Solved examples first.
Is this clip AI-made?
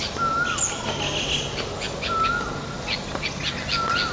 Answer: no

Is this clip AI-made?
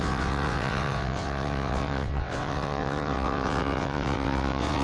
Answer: yes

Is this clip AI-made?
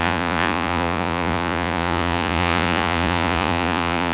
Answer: yes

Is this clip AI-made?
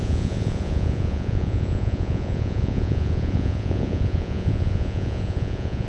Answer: yes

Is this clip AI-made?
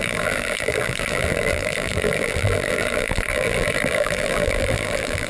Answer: yes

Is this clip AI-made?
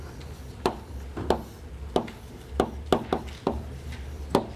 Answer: no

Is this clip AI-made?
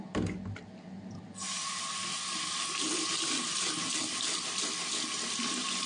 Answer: no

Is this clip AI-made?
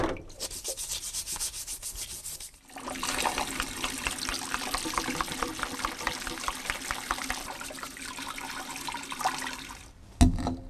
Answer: no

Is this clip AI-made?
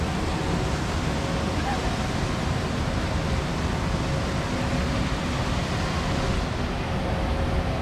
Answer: no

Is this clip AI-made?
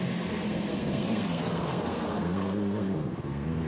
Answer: yes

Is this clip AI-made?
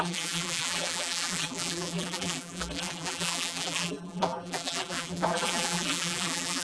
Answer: yes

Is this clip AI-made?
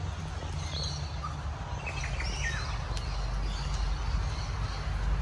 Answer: no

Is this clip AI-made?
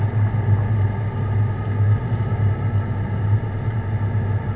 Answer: no